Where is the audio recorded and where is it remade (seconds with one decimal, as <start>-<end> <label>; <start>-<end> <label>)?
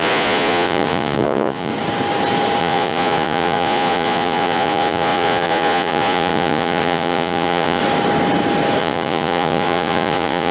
0.0-1.7 remade; 1.7-2.6 recorded; 2.6-7.8 remade; 7.8-8.8 recorded; 8.8-10.5 remade